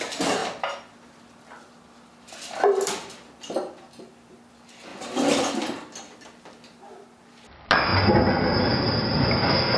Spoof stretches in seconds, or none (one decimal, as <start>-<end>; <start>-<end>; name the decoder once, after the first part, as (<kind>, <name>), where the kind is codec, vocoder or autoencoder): 4.9-5.5 (vocoder, BigVGAN v2)